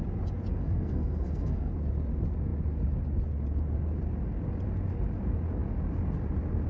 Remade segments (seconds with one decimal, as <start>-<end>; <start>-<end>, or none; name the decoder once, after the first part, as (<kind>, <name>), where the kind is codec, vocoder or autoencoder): 0.5-1.7 (codec, SNAC)